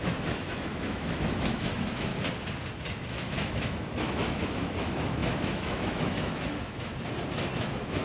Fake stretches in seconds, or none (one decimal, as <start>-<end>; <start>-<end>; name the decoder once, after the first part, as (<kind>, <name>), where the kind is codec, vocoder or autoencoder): 0.0-2.1 (autoencoder, DAC-VAE); 3.1-6.9; 7.6-8.0